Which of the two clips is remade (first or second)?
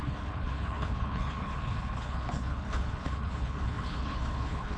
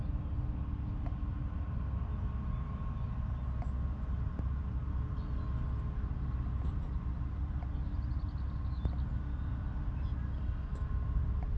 first